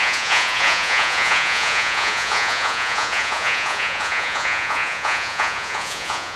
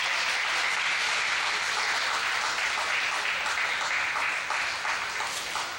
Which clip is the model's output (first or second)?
first